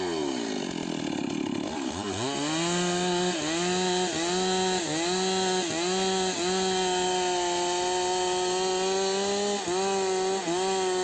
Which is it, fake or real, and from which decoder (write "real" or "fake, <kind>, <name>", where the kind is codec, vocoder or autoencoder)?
real